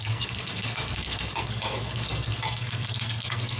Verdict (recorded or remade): remade